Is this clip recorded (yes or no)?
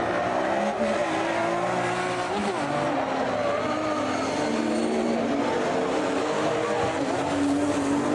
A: yes